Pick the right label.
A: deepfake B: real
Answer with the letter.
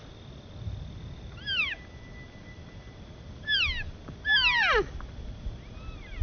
B